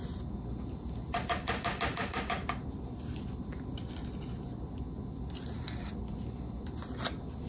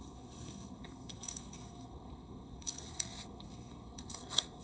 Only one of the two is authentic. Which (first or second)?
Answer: first